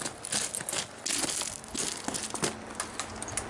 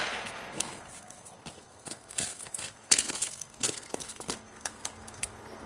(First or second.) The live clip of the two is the first